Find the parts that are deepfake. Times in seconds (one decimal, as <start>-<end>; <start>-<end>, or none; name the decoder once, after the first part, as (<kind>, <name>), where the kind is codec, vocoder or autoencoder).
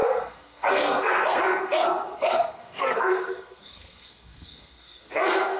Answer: 0.0-5.6 (codec, SNAC)